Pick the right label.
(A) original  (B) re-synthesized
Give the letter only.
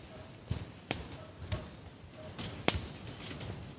A